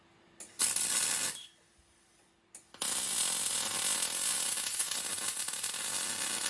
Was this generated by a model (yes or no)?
no